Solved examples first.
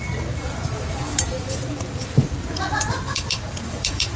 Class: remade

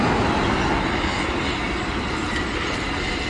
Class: recorded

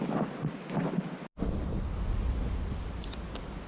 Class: recorded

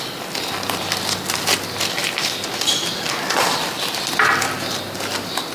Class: recorded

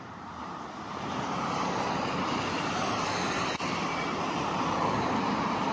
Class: remade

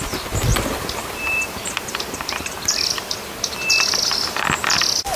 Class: remade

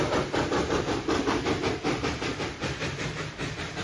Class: remade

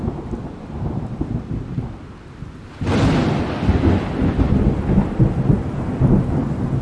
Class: recorded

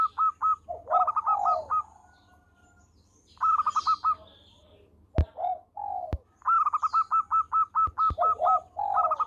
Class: recorded